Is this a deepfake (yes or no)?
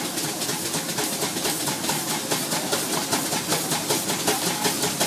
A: no